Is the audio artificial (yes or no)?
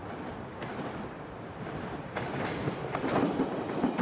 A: yes